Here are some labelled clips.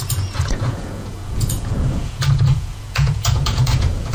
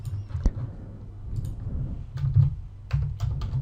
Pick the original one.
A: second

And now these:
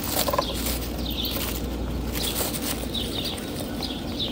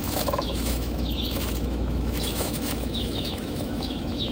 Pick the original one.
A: first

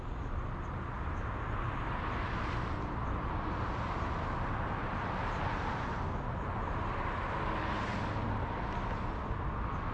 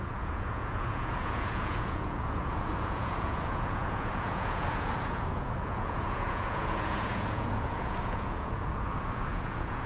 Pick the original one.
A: first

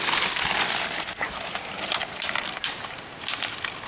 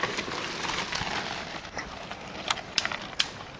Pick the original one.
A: first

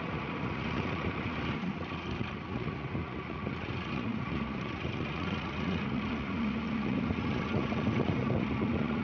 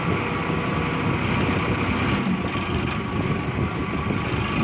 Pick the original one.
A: second